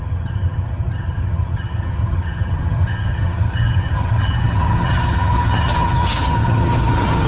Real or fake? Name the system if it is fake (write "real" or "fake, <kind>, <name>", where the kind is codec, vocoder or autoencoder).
fake, vocoder, HiFi-GAN